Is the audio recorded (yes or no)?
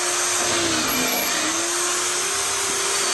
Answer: yes